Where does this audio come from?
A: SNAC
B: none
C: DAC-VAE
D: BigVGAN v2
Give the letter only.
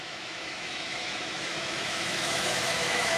C